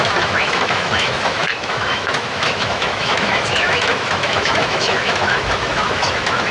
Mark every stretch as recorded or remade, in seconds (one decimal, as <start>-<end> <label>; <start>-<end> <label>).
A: 0.0-6.5 remade